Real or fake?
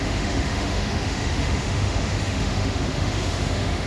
fake